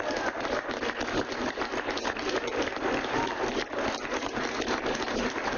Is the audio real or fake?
real